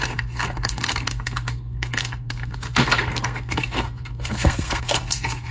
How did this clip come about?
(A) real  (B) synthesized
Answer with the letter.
B